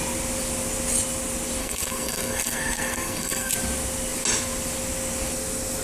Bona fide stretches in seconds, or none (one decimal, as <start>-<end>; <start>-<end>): 0.0-1.6; 3.5-5.8